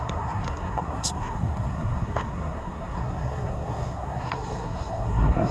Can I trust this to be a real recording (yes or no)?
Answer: no